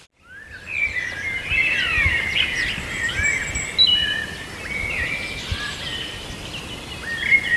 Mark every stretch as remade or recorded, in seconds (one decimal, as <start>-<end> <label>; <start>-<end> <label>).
0.0-7.6 recorded